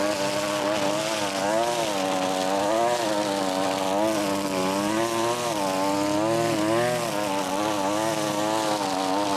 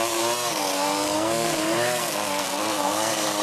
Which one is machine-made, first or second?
second